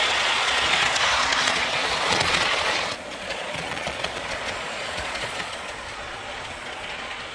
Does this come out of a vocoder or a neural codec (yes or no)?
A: yes